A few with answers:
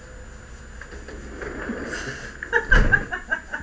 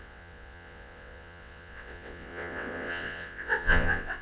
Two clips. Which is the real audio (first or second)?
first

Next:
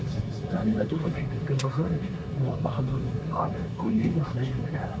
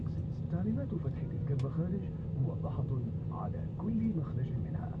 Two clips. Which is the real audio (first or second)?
second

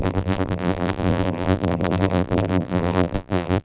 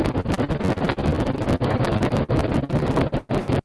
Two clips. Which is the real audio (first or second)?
second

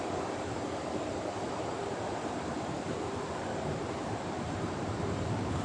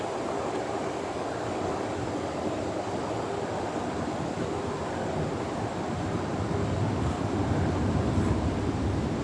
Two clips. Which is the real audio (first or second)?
second